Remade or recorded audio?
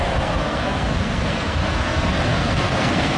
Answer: remade